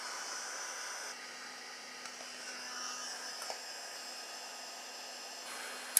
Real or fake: real